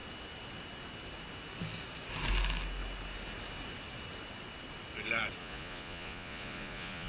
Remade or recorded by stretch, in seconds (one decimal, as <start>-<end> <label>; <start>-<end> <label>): 0.0-5.4 recorded; 5.4-7.1 remade